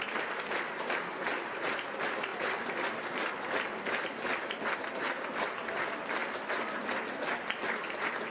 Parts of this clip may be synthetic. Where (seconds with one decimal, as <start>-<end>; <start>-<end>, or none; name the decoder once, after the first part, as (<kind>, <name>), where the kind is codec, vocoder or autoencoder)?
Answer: none